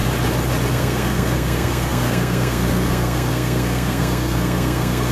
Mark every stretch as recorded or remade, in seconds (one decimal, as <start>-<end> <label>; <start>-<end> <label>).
0.0-0.7 recorded; 0.7-5.1 remade